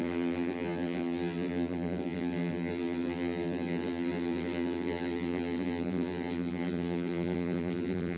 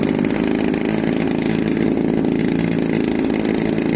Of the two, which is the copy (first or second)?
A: first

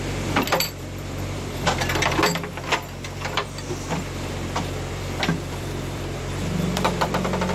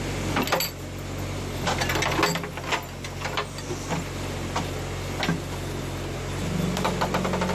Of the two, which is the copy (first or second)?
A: first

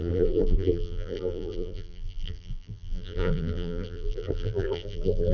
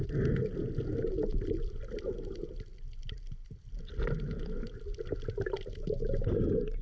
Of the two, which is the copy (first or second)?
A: first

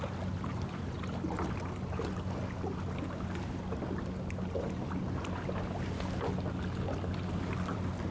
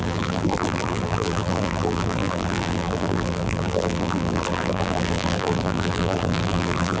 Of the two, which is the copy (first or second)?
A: second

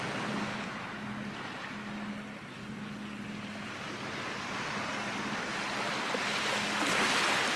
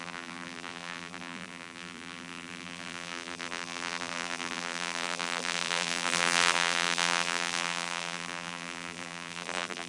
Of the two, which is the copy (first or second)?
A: second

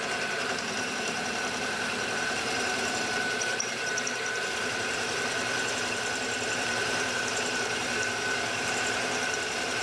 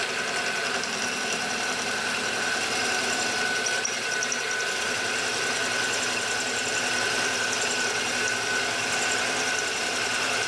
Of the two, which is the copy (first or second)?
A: first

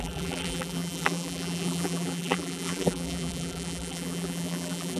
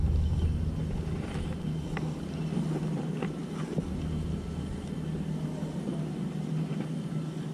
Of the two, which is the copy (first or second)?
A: first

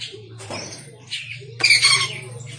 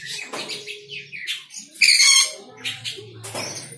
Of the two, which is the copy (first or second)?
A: first